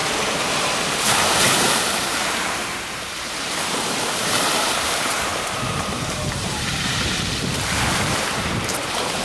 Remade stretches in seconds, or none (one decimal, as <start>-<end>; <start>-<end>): 1.0-9.2